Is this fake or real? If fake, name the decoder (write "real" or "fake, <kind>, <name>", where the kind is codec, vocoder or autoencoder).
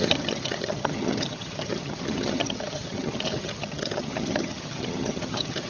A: fake, vocoder, HiFi-GAN